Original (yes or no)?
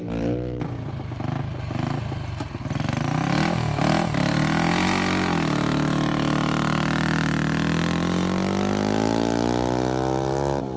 yes